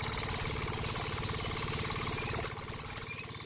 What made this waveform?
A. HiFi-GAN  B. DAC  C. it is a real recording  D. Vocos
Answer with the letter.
C